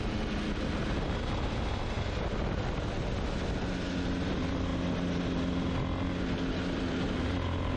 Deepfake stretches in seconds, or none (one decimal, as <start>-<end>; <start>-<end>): none